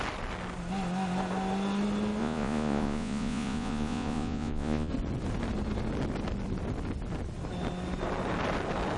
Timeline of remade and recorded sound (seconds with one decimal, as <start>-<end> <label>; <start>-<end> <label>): 0.0-2.2 recorded; 2.2-4.9 remade; 4.9-9.0 recorded